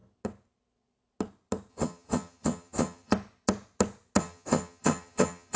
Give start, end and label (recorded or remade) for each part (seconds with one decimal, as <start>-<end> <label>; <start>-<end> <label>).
0.0-1.7 recorded; 1.7-3.1 remade; 3.1-4.2 recorded; 4.2-5.6 remade